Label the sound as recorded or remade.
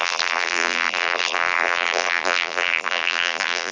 remade